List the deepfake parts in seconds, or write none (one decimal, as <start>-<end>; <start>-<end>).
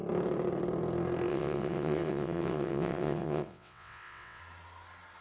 1.3-4.4